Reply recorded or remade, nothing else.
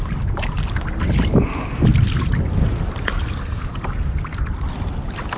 recorded